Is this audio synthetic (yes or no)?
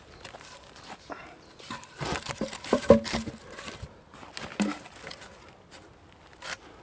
no